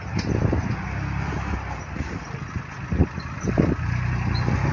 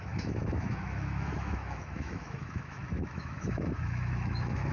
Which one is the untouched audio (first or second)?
first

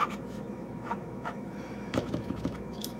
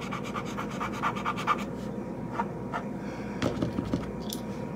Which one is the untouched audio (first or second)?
second